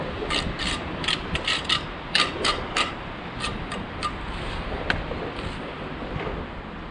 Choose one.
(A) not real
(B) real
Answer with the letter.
B